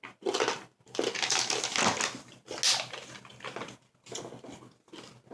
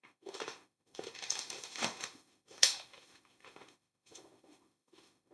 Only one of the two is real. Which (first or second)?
first